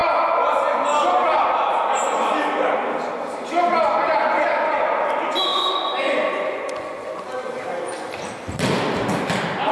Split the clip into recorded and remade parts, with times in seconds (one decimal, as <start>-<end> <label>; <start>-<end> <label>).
0.0-5.5 recorded; 5.5-7.2 remade; 7.2-9.7 recorded